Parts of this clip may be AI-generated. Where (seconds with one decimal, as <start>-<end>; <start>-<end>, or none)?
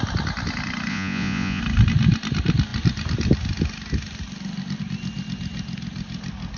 0.9-1.6